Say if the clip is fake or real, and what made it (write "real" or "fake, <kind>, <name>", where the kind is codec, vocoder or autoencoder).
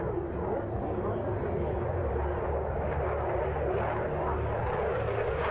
real